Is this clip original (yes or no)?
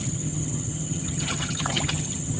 no